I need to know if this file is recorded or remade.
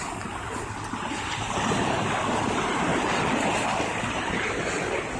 recorded